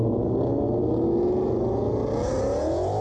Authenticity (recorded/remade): recorded